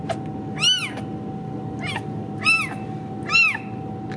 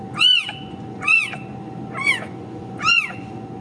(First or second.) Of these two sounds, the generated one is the second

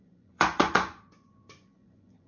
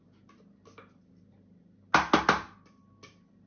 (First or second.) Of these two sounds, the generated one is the first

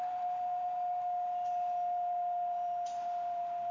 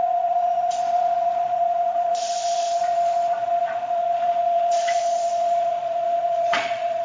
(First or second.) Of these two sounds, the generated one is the second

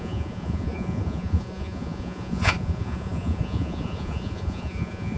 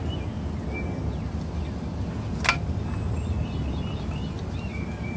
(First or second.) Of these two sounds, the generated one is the first